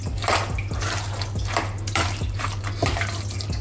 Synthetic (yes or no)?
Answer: yes